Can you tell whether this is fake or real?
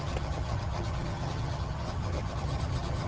fake